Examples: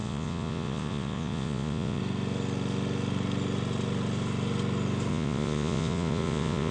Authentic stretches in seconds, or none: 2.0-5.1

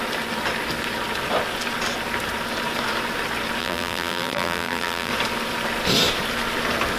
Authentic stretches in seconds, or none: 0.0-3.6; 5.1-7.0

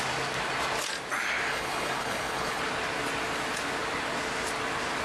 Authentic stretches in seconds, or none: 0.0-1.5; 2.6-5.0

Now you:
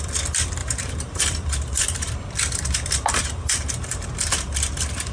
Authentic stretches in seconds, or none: 0.0-0.6; 2.1-3.2; 4.1-5.1